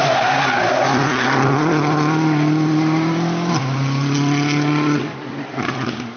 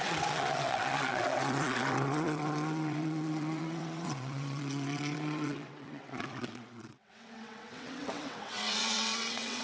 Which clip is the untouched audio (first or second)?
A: first